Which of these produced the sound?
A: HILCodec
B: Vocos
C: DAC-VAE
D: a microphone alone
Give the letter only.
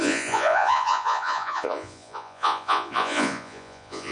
B